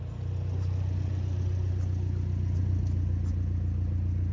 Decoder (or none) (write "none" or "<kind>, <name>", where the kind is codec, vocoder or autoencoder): none